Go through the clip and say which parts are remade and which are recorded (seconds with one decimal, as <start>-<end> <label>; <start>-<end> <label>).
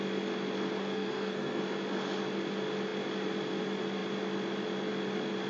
0.0-0.8 recorded; 0.8-1.6 remade; 1.6-5.5 recorded